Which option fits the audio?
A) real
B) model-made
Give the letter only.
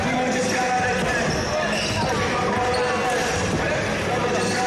A